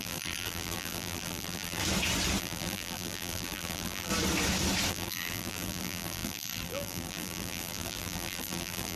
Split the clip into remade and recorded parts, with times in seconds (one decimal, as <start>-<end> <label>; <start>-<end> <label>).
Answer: 0.0-1.8 remade; 1.8-2.4 recorded; 2.4-4.1 remade; 4.1-4.9 recorded; 4.9-9.0 remade